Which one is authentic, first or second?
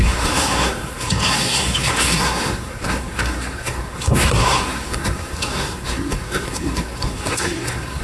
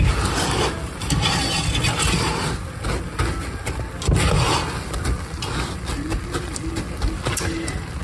second